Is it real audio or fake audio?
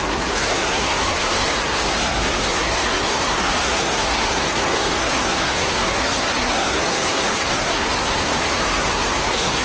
fake